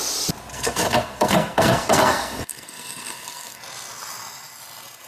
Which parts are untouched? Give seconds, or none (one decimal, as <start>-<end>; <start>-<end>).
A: 0.0-0.5; 3.6-5.1